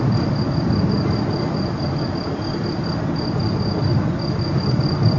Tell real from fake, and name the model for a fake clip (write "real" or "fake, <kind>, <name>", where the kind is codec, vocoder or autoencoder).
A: real